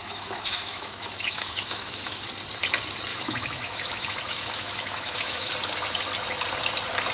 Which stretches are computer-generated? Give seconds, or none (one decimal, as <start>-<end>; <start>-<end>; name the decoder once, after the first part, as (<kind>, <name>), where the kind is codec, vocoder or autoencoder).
0.0-2.3 (autoencoder, DAC-VAE); 3.1-5.5